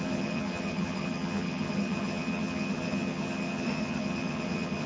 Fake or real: fake